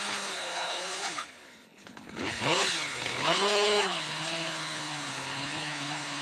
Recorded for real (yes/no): no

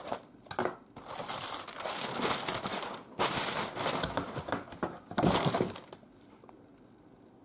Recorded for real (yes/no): yes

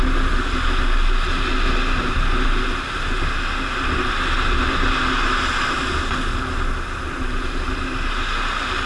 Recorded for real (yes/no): yes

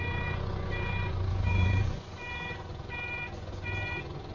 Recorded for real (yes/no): no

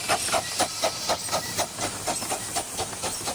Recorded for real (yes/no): no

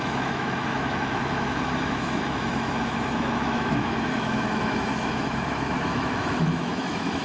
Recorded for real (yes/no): no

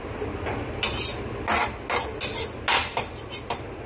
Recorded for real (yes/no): yes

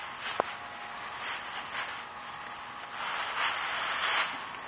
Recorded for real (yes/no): yes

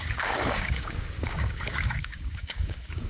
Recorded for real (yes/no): no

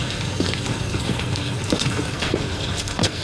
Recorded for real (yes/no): no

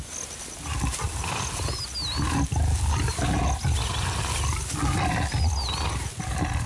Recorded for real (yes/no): yes